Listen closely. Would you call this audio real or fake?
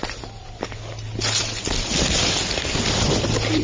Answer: real